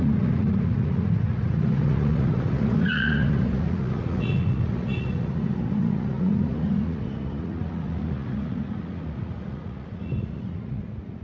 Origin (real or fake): fake